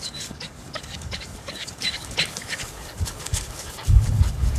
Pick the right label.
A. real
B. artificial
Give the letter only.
B